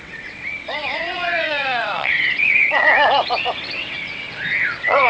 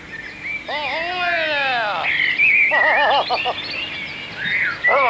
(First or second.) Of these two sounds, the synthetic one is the first